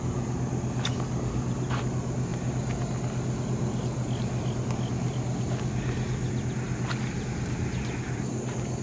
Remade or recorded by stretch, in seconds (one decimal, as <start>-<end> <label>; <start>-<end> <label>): 0.0-8.8 recorded